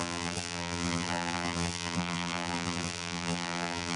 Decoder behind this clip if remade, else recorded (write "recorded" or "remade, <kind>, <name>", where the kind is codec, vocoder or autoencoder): remade, vocoder, BigVGAN v2